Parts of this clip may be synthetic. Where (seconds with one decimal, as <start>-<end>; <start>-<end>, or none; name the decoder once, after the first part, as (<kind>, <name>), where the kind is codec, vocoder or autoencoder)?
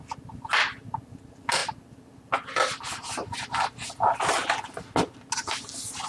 none